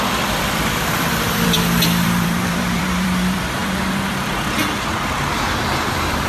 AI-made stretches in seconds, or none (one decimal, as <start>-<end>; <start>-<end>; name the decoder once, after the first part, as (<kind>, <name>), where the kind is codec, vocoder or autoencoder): 0.0-6.3 (vocoder, BigVGAN v2)